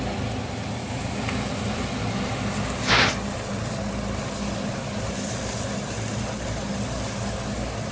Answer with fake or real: real